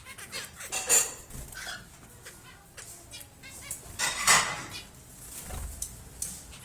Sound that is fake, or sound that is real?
real